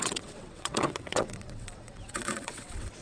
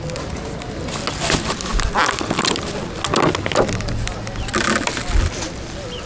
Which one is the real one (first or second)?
second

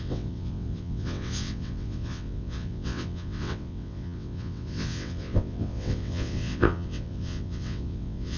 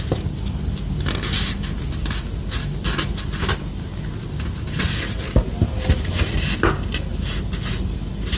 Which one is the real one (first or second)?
second